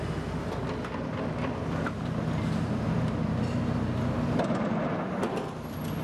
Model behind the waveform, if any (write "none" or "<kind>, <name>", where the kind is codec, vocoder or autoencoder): none